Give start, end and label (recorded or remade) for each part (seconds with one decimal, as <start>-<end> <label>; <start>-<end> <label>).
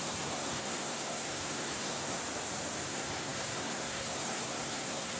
0.0-2.2 remade; 2.2-2.8 recorded; 2.8-5.2 remade